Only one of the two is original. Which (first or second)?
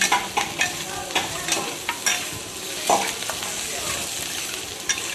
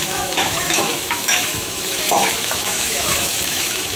first